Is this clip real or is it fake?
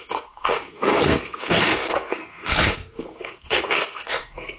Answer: fake